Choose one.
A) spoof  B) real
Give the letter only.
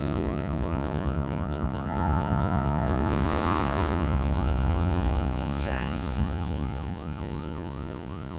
A